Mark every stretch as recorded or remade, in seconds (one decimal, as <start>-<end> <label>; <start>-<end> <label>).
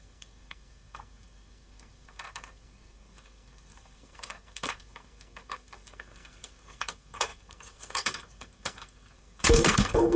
0.0-10.2 remade